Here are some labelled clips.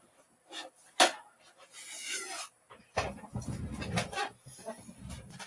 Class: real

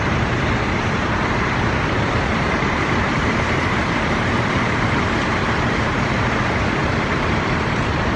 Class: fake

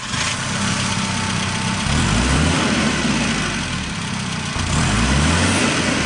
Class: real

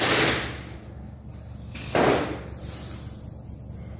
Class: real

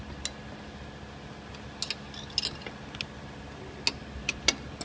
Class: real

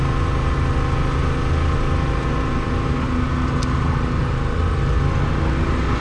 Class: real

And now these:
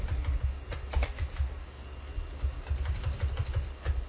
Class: real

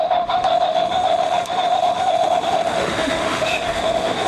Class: fake